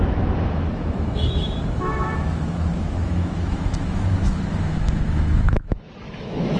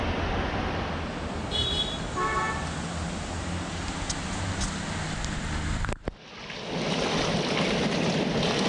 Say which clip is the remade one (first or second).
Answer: first